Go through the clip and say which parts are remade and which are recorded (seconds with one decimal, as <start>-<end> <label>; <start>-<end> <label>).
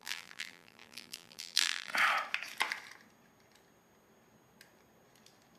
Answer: 0.0-1.9 remade; 1.9-5.6 recorded